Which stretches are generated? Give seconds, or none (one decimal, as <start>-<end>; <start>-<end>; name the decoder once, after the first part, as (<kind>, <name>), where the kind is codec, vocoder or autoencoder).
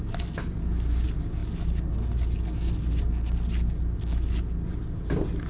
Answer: none